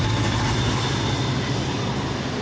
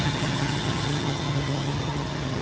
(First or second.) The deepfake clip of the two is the second